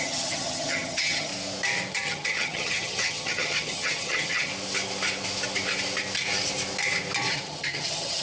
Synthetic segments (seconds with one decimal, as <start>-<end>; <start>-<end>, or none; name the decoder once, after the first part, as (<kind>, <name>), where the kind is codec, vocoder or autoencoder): 0.0-1.3 (vocoder, HiFi-GAN); 1.9-4.5; 7.3-8.2